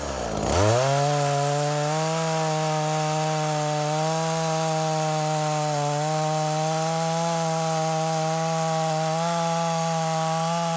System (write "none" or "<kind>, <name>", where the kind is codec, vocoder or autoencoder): none